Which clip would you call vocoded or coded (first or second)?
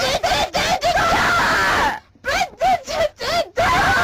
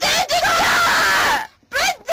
first